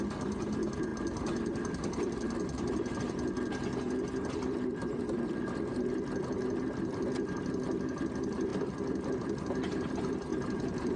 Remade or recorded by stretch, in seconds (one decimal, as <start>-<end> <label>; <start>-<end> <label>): 0.0-0.9 recorded; 0.9-3.0 remade; 3.0-8.5 recorded; 8.5-9.9 remade; 9.9-10.3 recorded; 10.3-11.0 remade